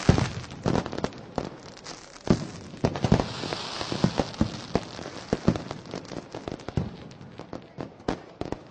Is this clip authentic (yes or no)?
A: yes